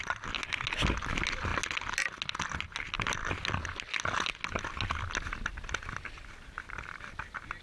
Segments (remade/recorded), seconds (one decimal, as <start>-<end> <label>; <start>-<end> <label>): 0.0-7.6 recorded